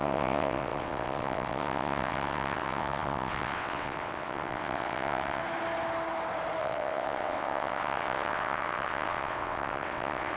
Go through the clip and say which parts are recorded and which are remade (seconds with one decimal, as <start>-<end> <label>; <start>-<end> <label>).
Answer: 0.0-5.4 remade; 5.4-6.6 recorded; 6.6-10.4 remade